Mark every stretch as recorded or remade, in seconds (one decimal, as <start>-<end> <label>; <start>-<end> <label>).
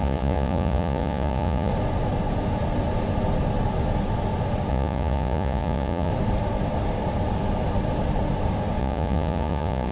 0.0-1.7 remade; 1.7-4.7 recorded; 4.7-6.1 remade; 6.1-8.8 recorded; 8.8-9.9 remade